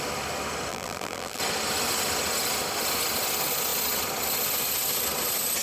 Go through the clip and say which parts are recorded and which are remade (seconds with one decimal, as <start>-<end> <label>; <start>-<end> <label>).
0.0-0.7 recorded; 0.7-1.4 remade; 1.4-5.6 recorded